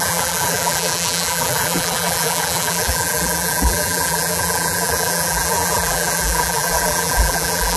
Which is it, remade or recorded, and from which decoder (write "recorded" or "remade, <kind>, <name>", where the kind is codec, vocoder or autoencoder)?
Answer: remade, vocoder, BigVGAN v2